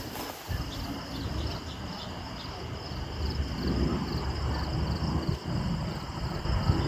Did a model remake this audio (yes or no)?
no